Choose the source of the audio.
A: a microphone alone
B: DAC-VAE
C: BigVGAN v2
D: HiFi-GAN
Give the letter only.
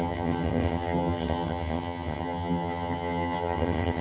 D